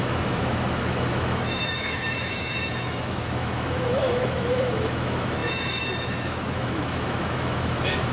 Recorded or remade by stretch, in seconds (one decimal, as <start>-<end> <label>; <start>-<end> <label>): 0.0-8.1 remade